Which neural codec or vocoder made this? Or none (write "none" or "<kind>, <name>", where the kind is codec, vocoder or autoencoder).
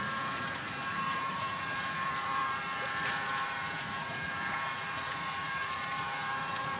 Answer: vocoder, Vocos